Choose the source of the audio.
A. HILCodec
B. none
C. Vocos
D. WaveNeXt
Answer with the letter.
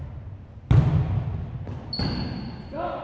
B